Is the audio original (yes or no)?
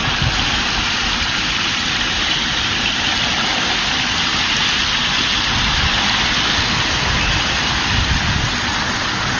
yes